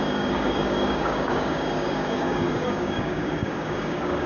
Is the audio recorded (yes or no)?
no